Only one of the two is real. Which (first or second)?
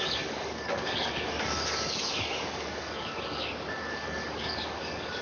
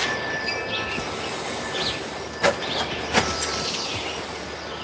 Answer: second